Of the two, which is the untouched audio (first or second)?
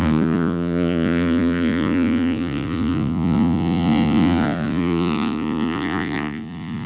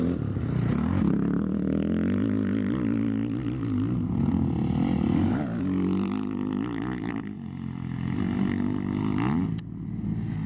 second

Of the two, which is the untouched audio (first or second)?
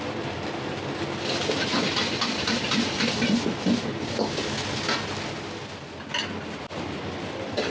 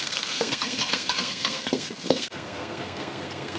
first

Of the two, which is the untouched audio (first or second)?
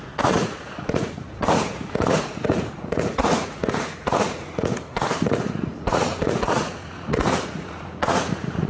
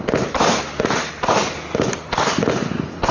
second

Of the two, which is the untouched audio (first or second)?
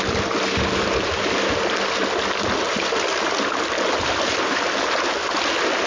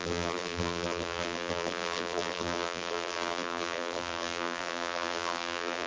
first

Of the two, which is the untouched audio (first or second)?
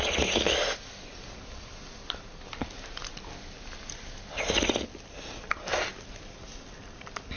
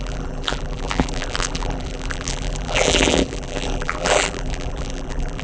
first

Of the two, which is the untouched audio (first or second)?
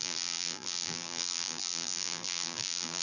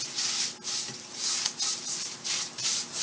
second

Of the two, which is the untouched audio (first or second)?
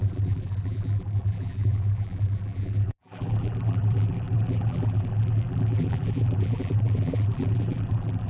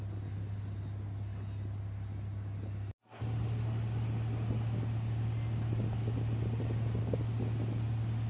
second